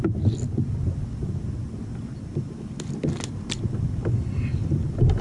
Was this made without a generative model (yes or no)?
yes